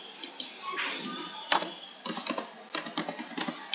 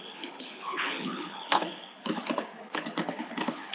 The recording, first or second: first